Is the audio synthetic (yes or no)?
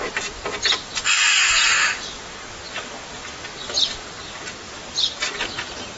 no